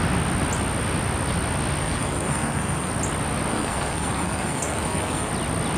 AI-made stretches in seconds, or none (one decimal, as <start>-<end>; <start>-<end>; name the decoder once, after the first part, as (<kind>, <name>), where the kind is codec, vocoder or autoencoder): 1.8-2.9 (codec, SNAC); 3.5-5.3